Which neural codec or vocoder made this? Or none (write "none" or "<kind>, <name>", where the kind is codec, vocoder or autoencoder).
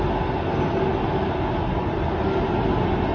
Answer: none